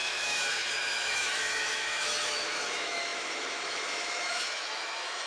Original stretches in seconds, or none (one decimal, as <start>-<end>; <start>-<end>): none